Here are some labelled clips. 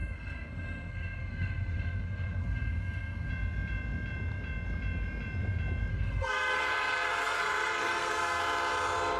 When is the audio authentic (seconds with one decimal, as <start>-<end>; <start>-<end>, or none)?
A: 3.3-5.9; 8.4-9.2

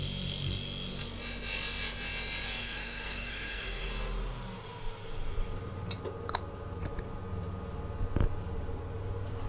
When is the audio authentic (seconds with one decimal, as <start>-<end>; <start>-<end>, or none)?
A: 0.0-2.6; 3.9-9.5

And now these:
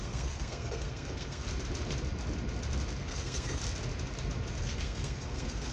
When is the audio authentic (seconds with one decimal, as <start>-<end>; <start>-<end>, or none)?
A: 1.4-3.0; 3.6-4.6

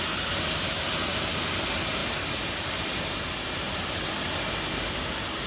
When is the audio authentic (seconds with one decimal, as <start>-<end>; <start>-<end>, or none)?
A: 0.0-5.5